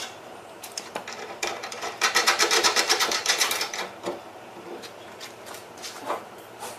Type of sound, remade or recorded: remade